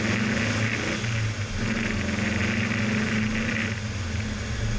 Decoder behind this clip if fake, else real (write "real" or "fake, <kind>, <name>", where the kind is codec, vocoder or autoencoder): real